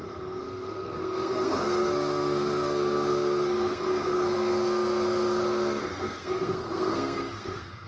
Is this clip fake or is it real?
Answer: fake